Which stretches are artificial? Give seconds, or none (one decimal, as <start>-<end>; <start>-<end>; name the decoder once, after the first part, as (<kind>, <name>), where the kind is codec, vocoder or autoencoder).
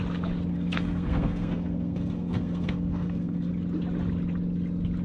0.5-3.5 (codec, SNAC)